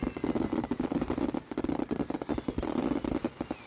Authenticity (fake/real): fake